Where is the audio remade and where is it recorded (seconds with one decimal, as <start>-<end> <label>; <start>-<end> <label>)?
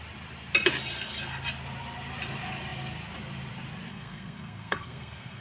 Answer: 0.0-3.9 recorded; 3.9-5.4 remade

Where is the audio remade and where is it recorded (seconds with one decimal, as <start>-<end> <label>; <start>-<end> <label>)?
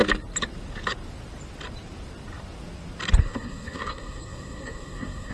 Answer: 0.0-3.2 recorded; 3.2-5.3 remade